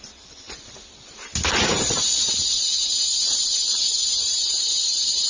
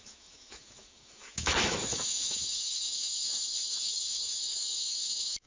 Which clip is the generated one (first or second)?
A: second